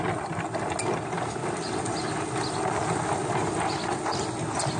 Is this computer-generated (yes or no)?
no